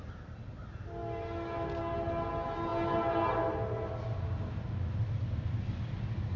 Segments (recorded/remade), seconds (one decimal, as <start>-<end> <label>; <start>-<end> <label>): 0.0-6.4 recorded